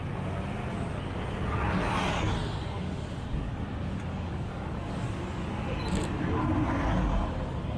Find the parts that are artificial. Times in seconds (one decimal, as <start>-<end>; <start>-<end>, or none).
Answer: 2.8-3.6; 4.1-5.2